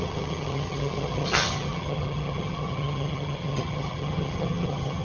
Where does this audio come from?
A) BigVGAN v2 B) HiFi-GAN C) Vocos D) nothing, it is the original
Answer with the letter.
B